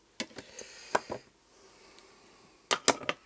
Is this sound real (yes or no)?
yes